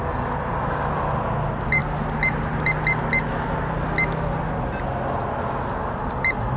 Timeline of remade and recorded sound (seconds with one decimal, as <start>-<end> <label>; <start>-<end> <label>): 0.0-6.6 recorded

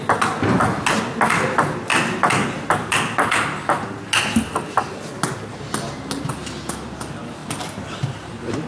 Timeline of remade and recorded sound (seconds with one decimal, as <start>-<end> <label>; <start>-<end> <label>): 0.0-8.7 recorded

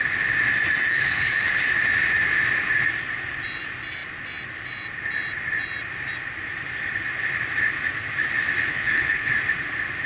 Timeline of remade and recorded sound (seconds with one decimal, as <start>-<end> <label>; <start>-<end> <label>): 0.0-0.9 recorded; 0.9-1.6 remade; 1.6-8.7 recorded; 8.7-9.3 remade; 9.3-10.1 recorded

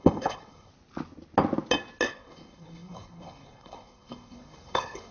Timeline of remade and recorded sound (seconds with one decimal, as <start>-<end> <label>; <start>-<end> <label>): 0.0-0.7 remade; 0.7-2.1 recorded; 2.1-5.1 remade